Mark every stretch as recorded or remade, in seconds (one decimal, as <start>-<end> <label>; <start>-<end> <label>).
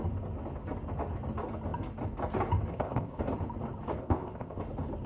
0.0-2.7 recorded; 2.7-3.2 remade; 3.2-4.0 recorded; 4.0-4.6 remade; 4.6-5.1 recorded